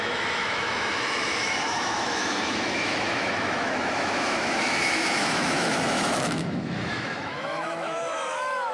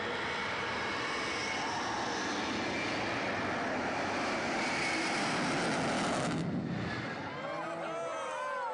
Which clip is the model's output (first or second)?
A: first